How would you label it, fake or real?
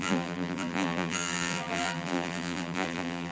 fake